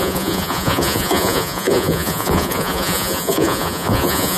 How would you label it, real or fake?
fake